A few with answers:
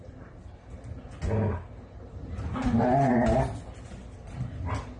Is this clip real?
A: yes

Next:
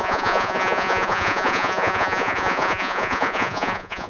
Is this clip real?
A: no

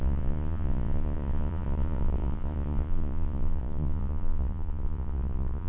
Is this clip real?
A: no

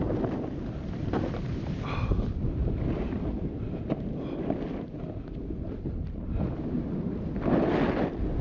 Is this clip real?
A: yes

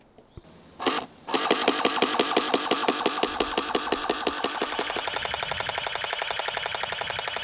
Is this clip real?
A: yes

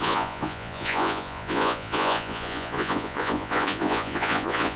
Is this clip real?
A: no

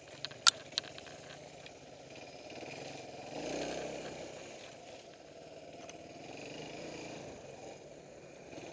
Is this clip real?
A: yes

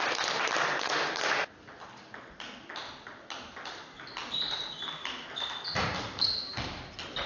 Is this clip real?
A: yes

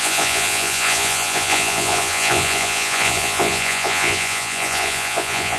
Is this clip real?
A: no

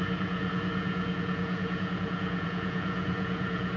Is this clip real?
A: no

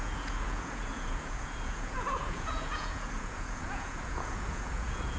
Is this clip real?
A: no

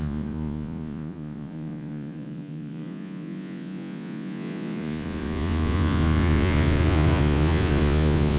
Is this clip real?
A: no